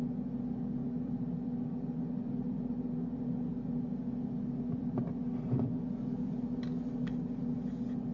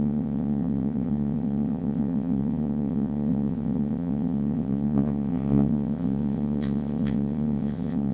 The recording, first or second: first